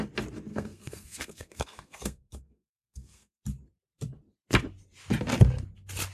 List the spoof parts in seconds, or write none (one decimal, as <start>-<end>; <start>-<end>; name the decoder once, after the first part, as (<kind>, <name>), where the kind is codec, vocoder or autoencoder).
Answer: 0.5-3.4 (codec, SNAC)